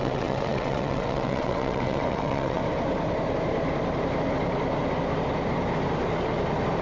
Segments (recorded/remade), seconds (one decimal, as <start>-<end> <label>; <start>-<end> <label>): 0.0-2.6 remade; 2.6-6.8 recorded